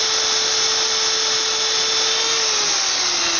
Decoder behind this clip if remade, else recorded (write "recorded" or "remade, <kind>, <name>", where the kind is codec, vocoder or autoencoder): recorded